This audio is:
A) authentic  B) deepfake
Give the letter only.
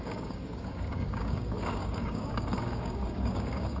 B